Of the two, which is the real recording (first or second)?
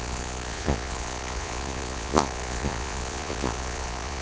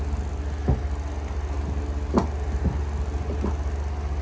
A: second